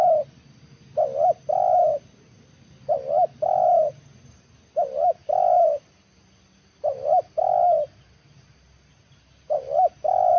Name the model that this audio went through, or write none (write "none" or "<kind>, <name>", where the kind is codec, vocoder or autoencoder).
none